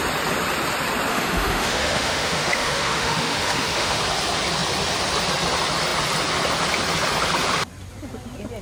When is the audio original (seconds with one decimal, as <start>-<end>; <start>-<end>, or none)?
0.0-1.1; 4.0-8.6